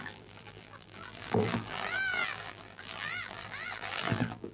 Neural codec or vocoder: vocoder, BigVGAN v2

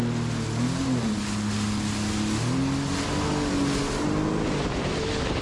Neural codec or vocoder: none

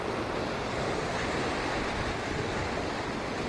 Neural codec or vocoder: vocoder, BigVGAN v2